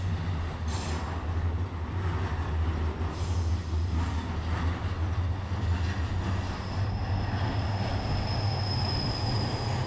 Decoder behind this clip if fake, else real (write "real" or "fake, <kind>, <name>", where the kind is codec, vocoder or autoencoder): real